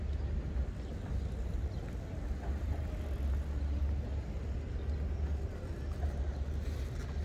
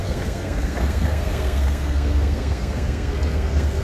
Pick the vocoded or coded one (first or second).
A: second